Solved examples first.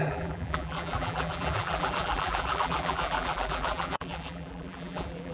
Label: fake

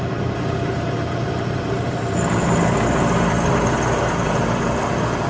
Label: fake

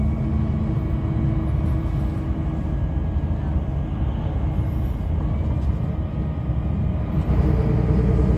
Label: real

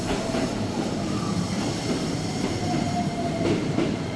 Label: fake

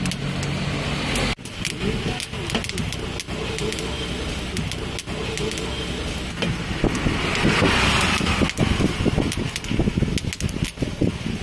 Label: real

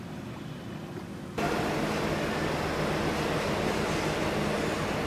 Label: real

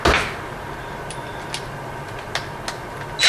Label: real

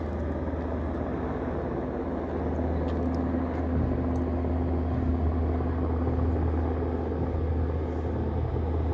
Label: real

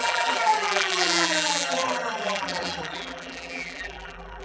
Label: fake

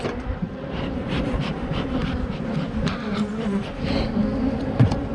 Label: fake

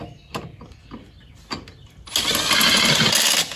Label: real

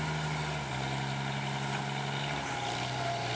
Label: real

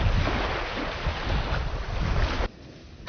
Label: real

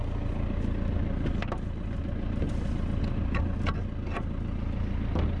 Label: real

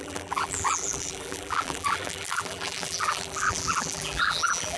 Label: fake